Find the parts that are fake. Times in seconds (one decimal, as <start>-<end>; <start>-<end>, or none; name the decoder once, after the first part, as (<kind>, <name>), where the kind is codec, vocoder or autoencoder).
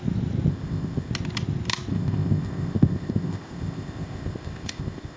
0.5-1.1 (codec, ZipCodec); 1.9-5.2